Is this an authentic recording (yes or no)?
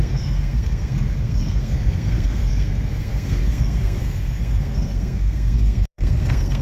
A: no